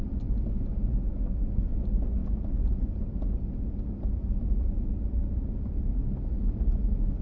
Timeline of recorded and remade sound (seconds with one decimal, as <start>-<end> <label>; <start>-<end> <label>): 0.0-7.2 recorded